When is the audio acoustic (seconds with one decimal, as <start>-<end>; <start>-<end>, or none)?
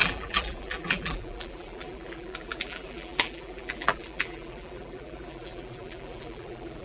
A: none